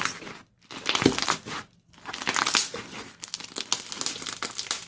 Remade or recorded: recorded